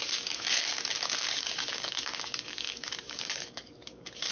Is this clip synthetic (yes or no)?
yes